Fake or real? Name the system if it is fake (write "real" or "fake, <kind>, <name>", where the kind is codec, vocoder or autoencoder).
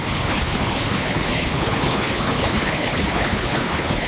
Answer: fake, codec, HILCodec